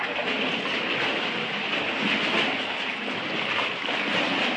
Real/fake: real